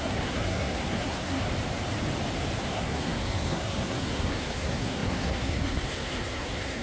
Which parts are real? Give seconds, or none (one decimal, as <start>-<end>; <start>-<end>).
1.5-2.6

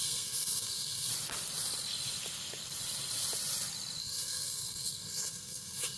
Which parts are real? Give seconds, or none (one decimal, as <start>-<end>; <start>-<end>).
1.1-4.0

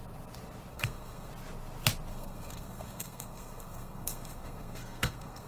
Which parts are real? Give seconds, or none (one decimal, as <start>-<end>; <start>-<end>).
0.0-0.7; 1.3-2.1

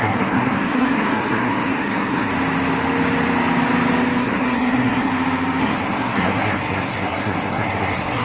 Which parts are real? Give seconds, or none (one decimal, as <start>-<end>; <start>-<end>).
2.3-4.2; 5.1-5.6

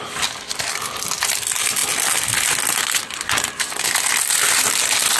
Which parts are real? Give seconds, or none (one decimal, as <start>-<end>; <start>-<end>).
0.0-5.2

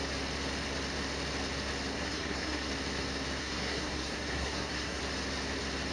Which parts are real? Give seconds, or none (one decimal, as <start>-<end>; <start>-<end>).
0.0-1.9; 2.7-3.4; 5.0-5.9

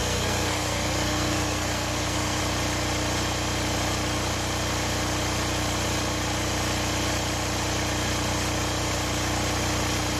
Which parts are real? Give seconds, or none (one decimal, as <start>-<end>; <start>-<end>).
2.4-10.2